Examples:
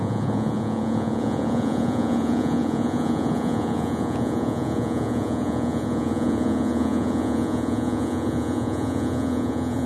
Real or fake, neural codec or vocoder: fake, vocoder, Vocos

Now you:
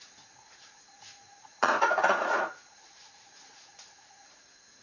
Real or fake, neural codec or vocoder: fake, vocoder, Vocos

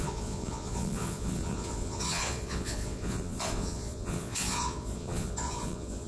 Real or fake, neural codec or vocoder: fake, vocoder, Vocos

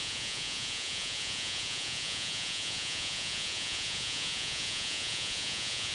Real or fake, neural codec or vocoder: fake, vocoder, Vocos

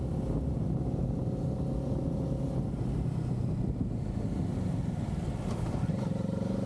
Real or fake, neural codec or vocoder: real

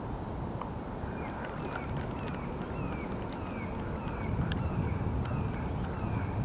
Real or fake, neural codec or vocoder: real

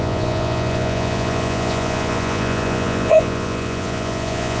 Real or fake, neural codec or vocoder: fake, vocoder, Vocos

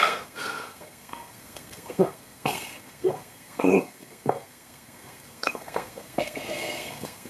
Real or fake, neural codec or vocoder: fake, codec, SNAC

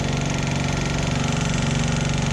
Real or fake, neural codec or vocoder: real